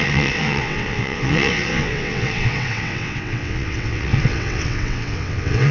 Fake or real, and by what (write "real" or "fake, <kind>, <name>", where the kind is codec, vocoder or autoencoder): fake, vocoder, WaveNeXt